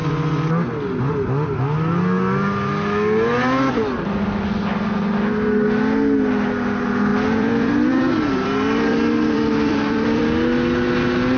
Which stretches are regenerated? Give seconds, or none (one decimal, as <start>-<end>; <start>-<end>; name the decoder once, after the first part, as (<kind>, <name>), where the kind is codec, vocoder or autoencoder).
7.1-10.2 (vocoder, BigVGAN v2)